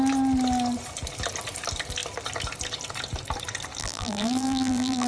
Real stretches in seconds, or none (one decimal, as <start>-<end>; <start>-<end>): 0.0-3.8